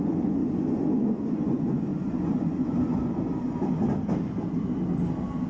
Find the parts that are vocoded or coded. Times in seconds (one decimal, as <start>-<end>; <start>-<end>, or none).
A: 0.0-3.1